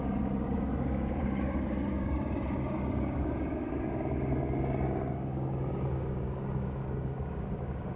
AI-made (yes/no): yes